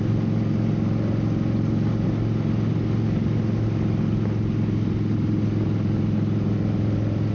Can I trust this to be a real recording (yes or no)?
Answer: yes